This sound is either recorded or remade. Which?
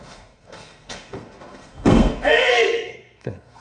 remade